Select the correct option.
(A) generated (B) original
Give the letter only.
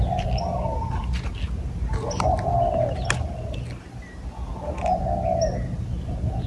B